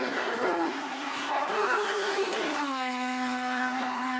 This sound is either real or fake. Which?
fake